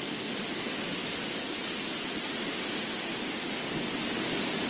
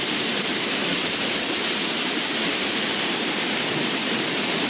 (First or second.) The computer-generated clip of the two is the second